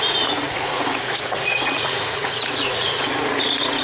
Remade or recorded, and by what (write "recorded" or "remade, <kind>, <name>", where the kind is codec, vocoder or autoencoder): remade, vocoder, Vocos